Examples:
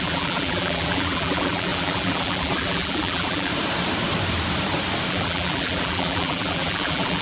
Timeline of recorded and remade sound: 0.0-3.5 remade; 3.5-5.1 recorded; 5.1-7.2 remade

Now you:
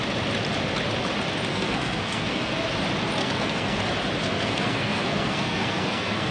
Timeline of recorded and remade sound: 0.0-1.5 recorded; 1.5-2.5 remade; 2.5-3.2 recorded; 3.2-3.8 remade; 3.8-4.2 recorded; 4.2-6.3 remade

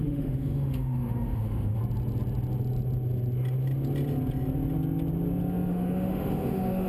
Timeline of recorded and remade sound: 0.0-1.8 remade; 1.8-5.7 recorded; 5.7-6.9 remade

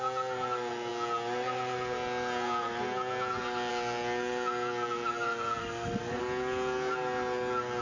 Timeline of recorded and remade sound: 0.0-5.6 recorded; 5.6-6.2 remade; 6.2-7.8 recorded